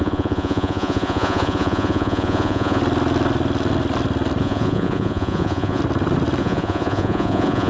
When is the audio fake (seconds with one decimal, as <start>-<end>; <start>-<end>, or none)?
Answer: 0.0-2.8; 4.4-5.8; 6.4-7.7